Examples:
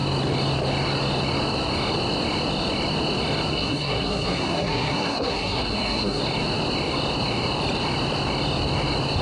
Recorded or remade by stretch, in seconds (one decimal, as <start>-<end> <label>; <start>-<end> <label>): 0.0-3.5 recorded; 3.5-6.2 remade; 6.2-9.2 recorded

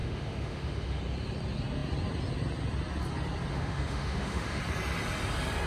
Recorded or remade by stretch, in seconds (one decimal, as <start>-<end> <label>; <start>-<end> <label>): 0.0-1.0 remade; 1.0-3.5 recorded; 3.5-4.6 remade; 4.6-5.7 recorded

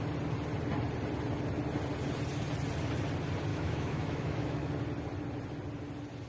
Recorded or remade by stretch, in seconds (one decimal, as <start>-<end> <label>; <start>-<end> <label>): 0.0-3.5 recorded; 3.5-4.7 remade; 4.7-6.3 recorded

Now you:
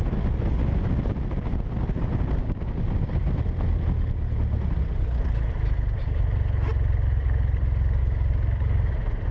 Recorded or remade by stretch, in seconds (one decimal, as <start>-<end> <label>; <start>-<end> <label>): 0.0-2.4 recorded; 2.4-3.1 remade; 3.1-8.0 recorded; 8.0-8.9 remade; 8.9-9.3 recorded

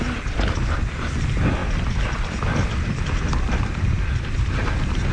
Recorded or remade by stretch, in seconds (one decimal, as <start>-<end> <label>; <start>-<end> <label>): 0.0-1.6 recorded; 1.6-5.1 remade